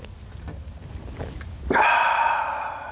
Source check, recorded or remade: recorded